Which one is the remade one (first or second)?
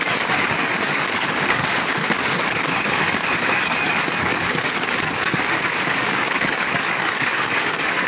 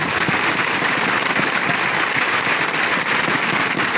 first